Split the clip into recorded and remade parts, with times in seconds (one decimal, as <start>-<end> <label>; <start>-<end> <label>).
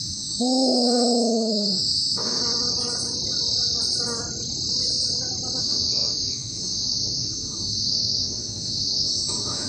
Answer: 0.0-2.4 remade; 2.4-5.6 recorded; 5.6-9.7 remade